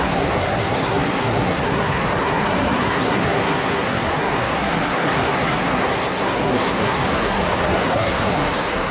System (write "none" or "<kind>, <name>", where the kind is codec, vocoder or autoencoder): codec, SNAC